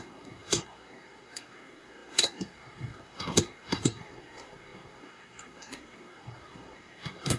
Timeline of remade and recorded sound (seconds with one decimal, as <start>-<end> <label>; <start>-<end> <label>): 0.0-7.4 remade